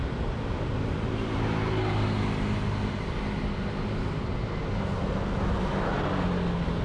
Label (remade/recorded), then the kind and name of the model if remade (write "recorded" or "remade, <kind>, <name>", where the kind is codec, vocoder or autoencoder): recorded